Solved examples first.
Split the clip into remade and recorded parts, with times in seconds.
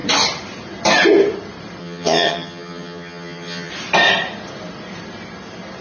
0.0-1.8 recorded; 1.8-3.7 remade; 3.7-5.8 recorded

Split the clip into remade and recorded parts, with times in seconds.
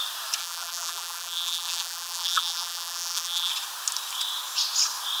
0.0-0.4 recorded; 0.4-3.5 remade; 3.5-5.2 recorded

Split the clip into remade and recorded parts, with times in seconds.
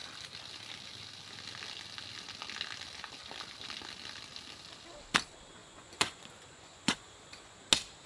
0.0-5.6 recorded; 5.6-7.6 remade; 7.6-8.1 recorded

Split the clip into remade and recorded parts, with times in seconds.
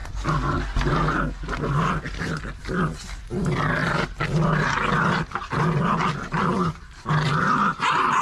0.0-8.2 recorded